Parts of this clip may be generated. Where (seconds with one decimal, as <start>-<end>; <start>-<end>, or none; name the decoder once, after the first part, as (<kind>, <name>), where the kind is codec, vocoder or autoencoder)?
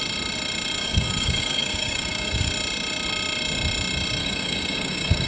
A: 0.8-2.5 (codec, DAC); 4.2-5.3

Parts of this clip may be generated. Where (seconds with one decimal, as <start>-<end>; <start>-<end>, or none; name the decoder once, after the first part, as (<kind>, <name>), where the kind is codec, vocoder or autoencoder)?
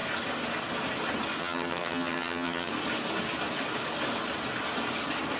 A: 1.4-2.7 (vocoder, HiFi-GAN)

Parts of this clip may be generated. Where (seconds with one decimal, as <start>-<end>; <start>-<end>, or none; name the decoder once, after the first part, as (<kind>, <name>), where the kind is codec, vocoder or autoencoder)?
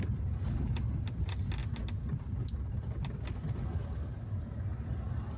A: none